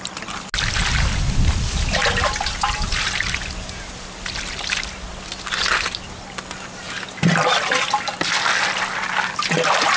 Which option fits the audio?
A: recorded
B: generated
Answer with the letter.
A